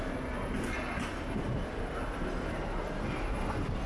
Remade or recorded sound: recorded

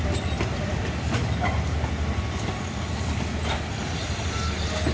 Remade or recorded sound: recorded